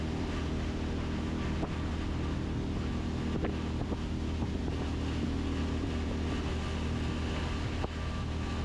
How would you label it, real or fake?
real